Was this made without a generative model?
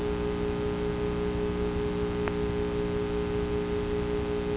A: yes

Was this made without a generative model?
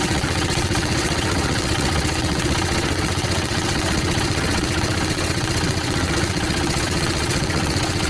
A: no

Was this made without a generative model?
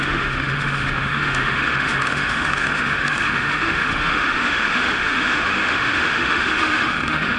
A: no